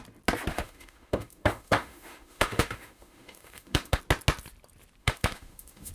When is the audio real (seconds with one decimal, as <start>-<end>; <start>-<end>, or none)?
0.0-0.5; 4.0-5.0